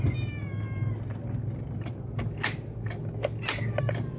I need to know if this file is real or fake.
real